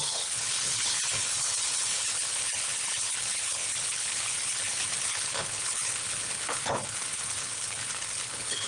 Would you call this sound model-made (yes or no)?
yes